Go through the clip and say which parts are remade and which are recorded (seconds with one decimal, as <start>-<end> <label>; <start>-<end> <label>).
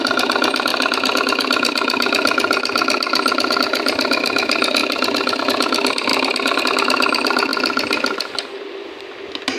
0.0-6.1 recorded; 6.1-6.6 remade; 6.6-7.5 recorded; 7.5-9.1 remade; 9.1-9.6 recorded